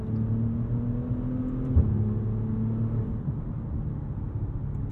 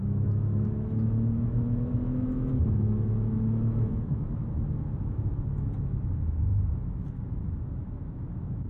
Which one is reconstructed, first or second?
second